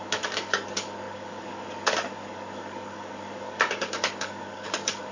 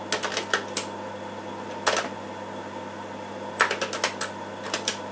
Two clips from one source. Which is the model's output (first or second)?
first